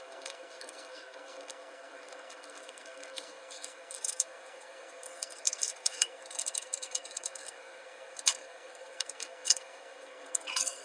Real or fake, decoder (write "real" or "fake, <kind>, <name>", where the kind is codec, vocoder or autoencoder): fake, codec, SNAC